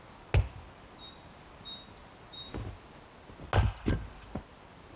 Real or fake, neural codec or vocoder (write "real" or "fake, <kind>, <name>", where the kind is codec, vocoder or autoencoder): real